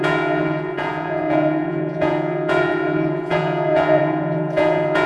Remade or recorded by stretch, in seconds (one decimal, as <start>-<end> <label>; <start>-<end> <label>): 0.0-5.1 remade

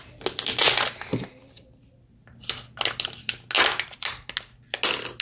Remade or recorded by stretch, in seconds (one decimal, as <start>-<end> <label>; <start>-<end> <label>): 0.0-5.2 recorded

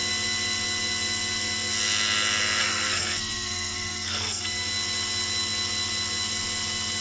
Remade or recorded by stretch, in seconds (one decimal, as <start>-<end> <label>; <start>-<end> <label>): 0.0-2.6 recorded; 2.6-4.4 remade; 4.4-7.0 recorded